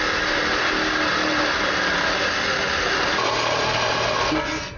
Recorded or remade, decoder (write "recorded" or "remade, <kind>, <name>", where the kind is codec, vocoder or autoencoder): recorded